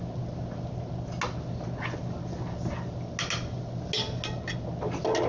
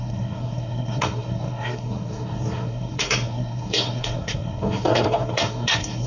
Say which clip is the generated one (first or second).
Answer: second